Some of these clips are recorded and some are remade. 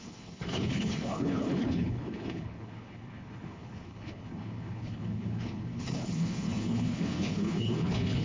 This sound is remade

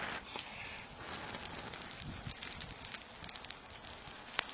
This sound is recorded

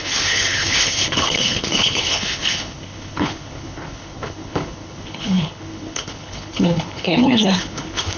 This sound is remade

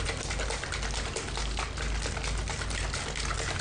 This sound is recorded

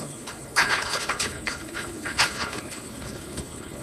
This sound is remade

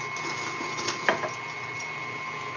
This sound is recorded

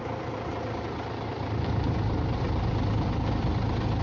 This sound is recorded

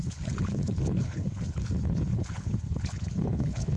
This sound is remade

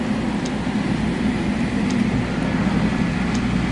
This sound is recorded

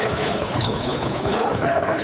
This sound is remade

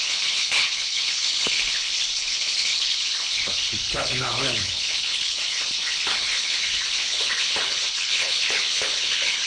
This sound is remade